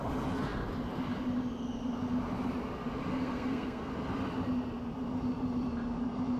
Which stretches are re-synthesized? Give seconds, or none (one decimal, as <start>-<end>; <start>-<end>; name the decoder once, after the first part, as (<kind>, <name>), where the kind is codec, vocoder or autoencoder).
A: 3.1-3.9 (codec, SNAC)